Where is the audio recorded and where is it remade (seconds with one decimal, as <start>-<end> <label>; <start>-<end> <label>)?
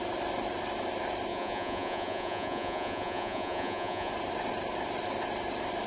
0.0-1.3 recorded; 1.3-4.1 remade; 4.1-5.9 recorded